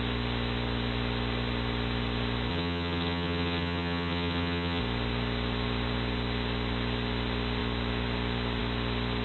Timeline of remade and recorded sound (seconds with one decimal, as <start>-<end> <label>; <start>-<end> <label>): 0.0-2.5 recorded; 2.5-4.8 remade; 4.8-9.2 recorded

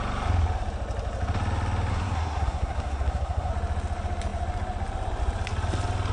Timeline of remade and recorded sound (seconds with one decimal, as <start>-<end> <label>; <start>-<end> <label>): 0.0-1.9 recorded; 1.9-3.5 remade; 3.5-6.1 recorded

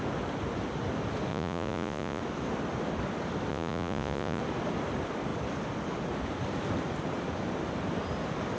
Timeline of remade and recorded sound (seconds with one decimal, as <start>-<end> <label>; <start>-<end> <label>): 0.0-1.3 recorded; 1.3-2.2 remade; 2.2-3.5 recorded; 3.5-4.4 remade; 4.4-8.6 recorded

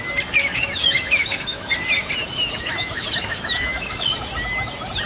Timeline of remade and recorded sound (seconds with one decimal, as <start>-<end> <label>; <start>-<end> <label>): 0.0-0.4 recorded; 0.4-1.7 remade; 1.7-2.2 recorded; 2.2-4.0 remade; 4.0-5.1 recorded

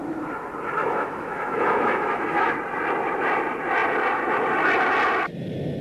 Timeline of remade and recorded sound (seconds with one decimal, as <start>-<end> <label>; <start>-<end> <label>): 0.0-0.8 recorded; 0.8-2.6 remade; 2.6-5.8 recorded

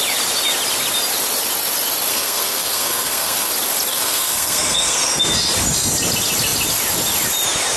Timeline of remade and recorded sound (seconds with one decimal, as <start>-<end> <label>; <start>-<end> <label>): 0.0-2.1 recorded; 2.1-3.5 remade; 3.5-3.9 recorded; 3.9-5.2 remade; 5.2-7.8 recorded